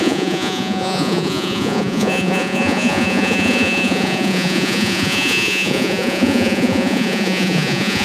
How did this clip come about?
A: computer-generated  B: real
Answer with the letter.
A